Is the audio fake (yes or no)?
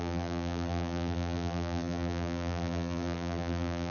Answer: yes